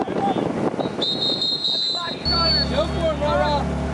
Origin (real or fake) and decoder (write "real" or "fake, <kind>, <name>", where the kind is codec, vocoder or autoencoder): real